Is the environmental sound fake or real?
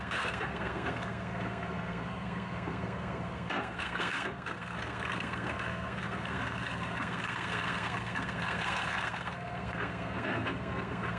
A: fake